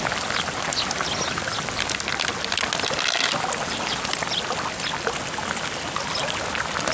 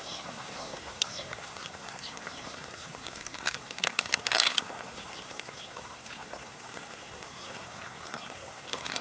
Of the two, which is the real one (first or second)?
first